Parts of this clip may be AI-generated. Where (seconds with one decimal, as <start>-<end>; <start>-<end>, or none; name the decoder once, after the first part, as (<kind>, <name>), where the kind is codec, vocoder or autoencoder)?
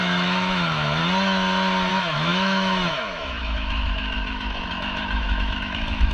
0.0-1.0 (autoencoder, DAC-VAE); 1.9-6.1